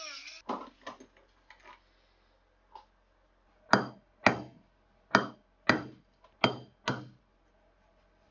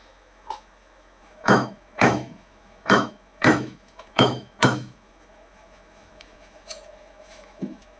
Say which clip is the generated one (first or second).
second